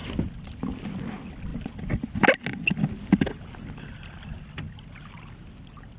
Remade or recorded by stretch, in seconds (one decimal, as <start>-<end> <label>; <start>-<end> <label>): 0.0-6.0 recorded